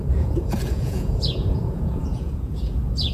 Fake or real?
fake